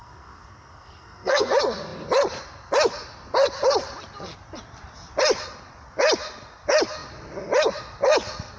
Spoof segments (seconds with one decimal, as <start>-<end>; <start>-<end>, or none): 0.0-1.5